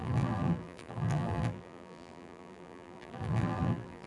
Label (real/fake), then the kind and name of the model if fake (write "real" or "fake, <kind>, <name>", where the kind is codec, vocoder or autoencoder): fake, vocoder, BigVGAN v2